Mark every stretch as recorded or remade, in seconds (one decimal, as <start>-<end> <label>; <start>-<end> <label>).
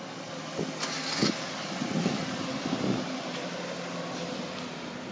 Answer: 0.0-5.1 recorded